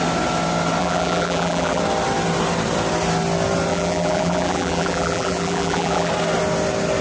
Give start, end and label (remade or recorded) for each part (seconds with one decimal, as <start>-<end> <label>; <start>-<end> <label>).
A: 0.0-0.8 recorded; 0.8-1.8 remade; 1.8-3.7 recorded; 3.7-6.1 remade; 6.1-7.0 recorded